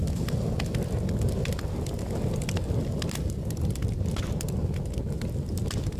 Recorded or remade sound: recorded